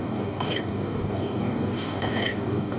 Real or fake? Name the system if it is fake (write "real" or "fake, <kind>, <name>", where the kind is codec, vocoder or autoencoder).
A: fake, codec, DAC